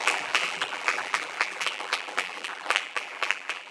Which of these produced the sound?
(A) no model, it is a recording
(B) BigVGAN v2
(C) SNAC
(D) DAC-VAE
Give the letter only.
B